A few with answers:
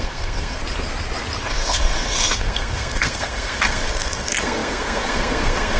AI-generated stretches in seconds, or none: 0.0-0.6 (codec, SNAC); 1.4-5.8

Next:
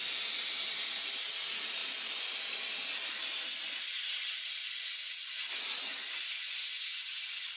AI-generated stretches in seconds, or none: none